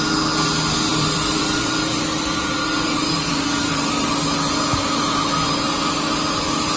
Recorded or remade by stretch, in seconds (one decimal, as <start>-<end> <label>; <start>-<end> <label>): 0.0-0.9 recorded; 0.9-4.2 remade; 4.2-6.8 recorded